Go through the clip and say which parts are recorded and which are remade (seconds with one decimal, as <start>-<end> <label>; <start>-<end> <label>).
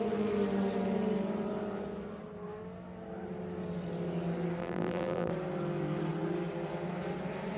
0.0-4.6 recorded; 4.6-5.3 remade; 5.3-7.6 recorded